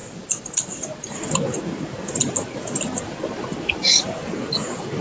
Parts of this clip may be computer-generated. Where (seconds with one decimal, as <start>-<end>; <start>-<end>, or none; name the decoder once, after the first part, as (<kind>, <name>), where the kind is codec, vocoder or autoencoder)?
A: none